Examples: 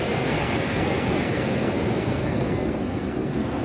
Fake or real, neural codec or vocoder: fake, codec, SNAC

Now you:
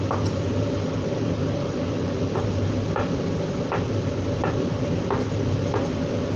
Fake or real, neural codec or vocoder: real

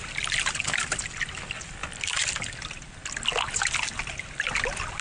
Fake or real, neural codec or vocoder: real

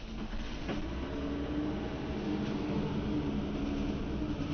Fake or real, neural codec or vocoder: real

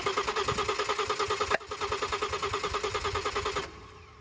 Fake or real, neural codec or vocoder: real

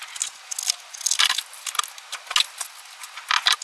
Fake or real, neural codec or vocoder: real